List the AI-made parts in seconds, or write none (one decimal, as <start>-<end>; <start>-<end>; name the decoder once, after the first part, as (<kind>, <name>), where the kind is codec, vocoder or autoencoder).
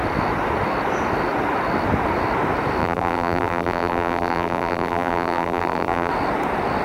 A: 2.8-6.1 (vocoder, BigVGAN v2)